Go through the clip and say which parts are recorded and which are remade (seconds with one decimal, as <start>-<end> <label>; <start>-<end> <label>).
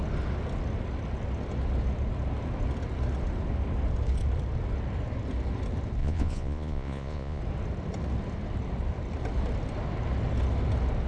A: 0.0-6.0 recorded; 6.0-7.4 remade; 7.4-11.1 recorded